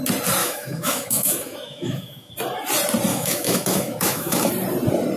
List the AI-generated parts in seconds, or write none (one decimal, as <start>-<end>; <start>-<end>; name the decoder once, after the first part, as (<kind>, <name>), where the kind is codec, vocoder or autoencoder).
0.4-2.3 (autoencoder, DAC-VAE); 3.1-4.5